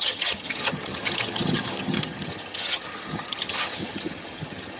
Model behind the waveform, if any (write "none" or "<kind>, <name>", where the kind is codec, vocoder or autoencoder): vocoder, HiFi-GAN